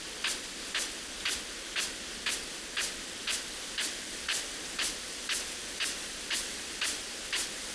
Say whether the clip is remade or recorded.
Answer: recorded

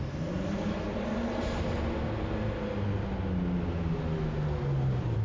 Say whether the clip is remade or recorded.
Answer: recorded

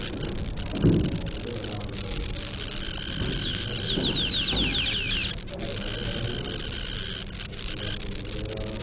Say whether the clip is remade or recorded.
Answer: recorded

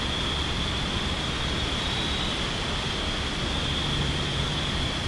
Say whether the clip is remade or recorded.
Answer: recorded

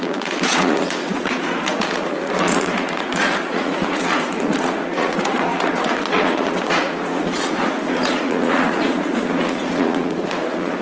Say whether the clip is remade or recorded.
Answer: remade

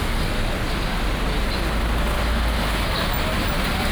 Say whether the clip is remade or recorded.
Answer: recorded